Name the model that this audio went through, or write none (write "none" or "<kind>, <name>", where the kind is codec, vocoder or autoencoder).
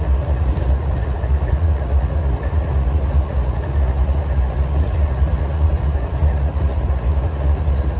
vocoder, Vocos